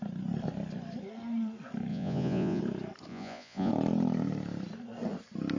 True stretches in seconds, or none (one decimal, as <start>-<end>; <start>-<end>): 0.0-1.9; 2.6-3.1; 3.7-5.6